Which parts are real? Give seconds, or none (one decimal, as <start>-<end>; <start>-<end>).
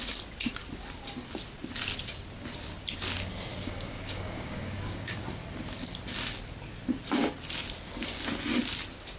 0.0-3.5; 5.2-9.2